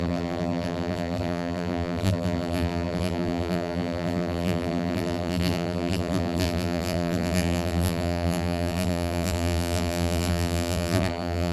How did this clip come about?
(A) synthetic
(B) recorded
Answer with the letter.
A